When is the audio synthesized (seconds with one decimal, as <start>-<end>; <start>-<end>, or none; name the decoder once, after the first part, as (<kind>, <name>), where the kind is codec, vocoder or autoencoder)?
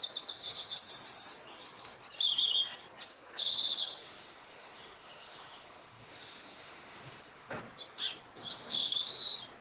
0.4-0.9 (autoencoder, DAC-VAE); 3.1-7.6; 8.5-9.1